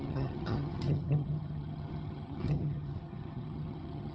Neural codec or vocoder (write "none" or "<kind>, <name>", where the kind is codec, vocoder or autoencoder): vocoder, HiFi-GAN